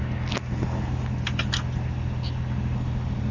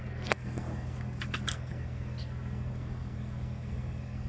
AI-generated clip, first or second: second